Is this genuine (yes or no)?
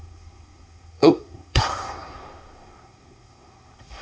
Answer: no